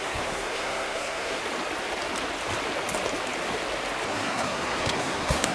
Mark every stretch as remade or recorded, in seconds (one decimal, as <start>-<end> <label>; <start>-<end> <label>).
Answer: 0.0-1.4 remade; 1.4-4.1 recorded; 4.1-5.5 remade